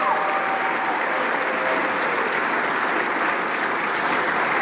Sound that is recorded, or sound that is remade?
recorded